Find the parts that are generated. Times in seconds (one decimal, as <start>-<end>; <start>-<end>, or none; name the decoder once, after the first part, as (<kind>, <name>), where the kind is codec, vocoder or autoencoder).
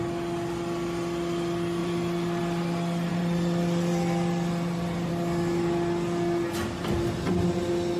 1.8-2.4 (vocoder, BigVGAN v2); 3.1-5.1